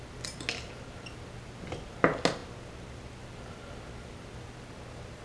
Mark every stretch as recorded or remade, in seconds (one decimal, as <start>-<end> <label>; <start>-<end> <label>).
0.0-5.2 recorded